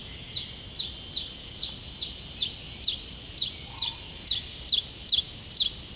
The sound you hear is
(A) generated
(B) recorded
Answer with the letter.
B